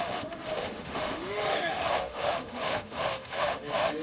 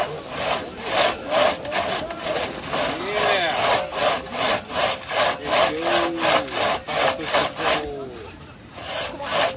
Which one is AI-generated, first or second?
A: first